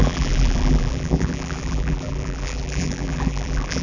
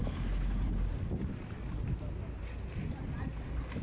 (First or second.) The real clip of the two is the second